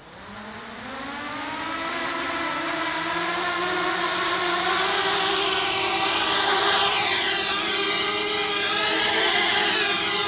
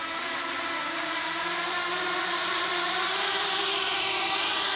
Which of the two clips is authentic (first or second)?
first